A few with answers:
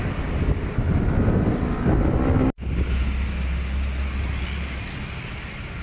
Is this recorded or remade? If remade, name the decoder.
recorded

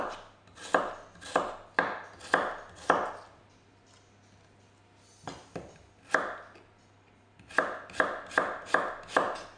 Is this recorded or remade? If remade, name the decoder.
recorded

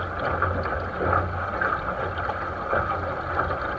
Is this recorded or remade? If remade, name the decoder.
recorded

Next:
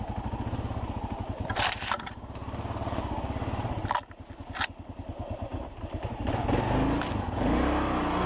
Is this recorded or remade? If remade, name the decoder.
recorded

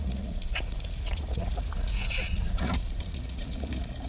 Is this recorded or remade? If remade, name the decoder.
remade, vocoder, Vocos